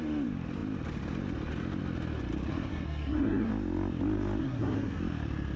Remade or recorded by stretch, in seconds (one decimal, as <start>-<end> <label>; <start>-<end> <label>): 0.0-2.5 recorded; 2.5-3.5 remade; 3.5-4.4 recorded; 4.4-5.0 remade; 5.0-5.6 recorded